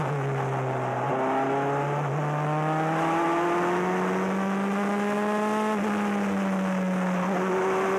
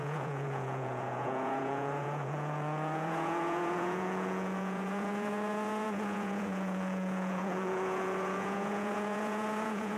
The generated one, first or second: second